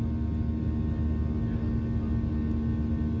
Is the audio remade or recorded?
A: recorded